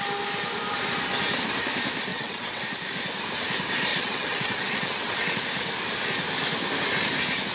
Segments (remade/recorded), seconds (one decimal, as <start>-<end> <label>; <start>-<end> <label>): 0.0-2.1 recorded; 2.1-2.6 remade; 2.6-3.9 recorded; 3.9-5.4 remade; 5.4-7.5 recorded